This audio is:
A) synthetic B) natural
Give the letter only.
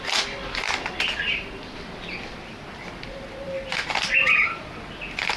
B